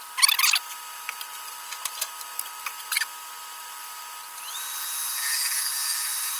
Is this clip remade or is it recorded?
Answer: recorded